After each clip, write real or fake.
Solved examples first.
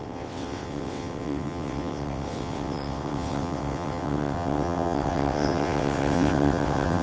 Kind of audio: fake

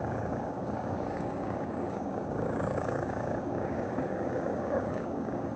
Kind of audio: fake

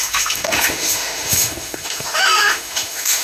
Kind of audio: fake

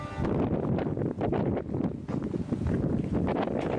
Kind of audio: real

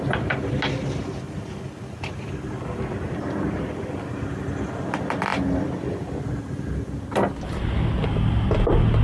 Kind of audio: real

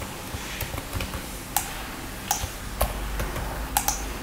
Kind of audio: real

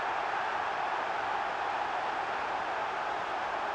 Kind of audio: real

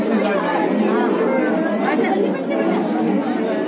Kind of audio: real